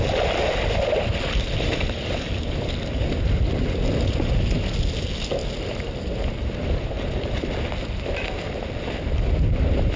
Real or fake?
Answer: real